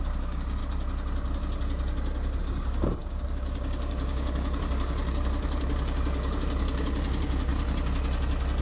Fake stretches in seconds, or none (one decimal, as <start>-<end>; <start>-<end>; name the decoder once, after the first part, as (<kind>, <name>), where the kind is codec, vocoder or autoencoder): 0.0-0.6 (codec, DAC); 2.4-7.5